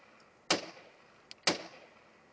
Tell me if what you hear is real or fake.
real